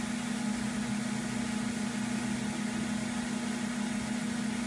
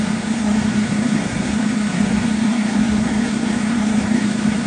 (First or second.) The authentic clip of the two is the first